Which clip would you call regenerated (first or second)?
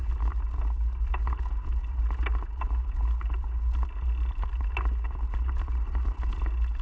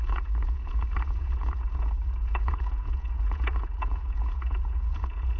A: second